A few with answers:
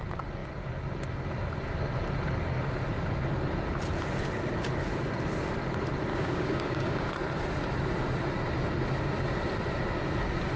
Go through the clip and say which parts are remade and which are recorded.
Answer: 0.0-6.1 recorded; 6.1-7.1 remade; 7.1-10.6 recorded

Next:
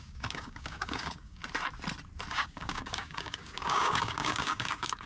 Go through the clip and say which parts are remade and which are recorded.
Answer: 0.0-1.4 remade; 1.4-2.3 recorded; 2.3-5.1 remade

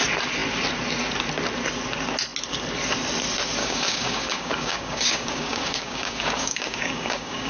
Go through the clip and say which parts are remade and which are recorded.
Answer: 0.0-3.6 recorded; 3.6-7.5 remade

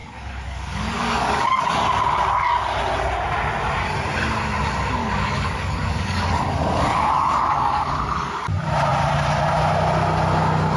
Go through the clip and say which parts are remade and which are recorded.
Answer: 0.0-1.6 remade; 1.6-5.0 recorded; 5.0-8.5 remade; 8.5-10.8 recorded

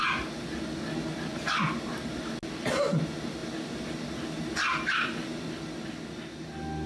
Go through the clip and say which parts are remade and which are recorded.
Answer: 0.0-6.9 recorded